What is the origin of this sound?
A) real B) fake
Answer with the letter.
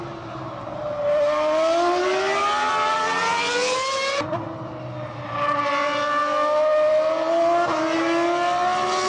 A